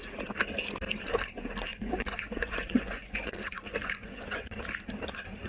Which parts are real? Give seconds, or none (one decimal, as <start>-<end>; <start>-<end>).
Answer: 0.0-1.7; 4.6-5.5